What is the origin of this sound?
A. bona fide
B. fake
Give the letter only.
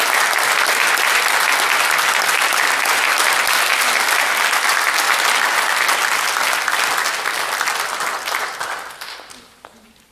A